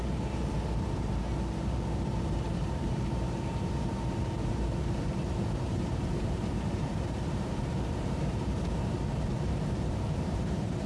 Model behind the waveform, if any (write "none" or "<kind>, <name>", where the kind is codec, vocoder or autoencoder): vocoder, BigVGAN v2